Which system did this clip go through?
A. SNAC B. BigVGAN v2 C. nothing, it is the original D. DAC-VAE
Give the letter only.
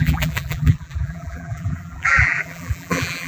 B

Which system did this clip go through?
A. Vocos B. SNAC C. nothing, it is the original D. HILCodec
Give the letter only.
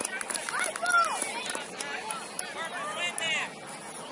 C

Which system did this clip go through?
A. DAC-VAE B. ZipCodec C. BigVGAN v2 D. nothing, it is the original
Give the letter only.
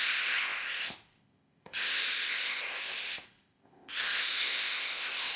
B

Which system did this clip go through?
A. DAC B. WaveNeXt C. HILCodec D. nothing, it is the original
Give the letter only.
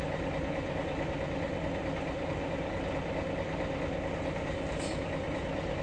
D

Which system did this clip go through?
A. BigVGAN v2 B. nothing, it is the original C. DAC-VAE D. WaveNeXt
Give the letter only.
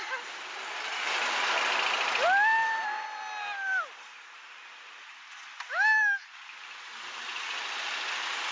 B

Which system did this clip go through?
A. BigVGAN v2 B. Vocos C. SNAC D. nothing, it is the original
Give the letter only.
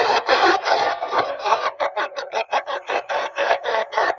C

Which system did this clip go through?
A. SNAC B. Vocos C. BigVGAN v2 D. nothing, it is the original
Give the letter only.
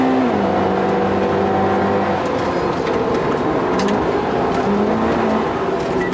D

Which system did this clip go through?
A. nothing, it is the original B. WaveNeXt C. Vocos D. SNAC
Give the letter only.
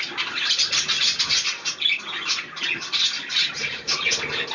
A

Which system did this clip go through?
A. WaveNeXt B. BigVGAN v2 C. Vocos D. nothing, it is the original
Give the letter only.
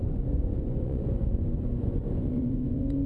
C